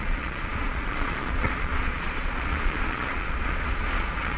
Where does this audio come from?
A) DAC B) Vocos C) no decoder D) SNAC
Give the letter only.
B